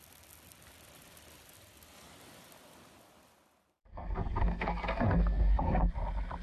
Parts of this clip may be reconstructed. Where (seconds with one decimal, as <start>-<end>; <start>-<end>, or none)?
3.9-5.9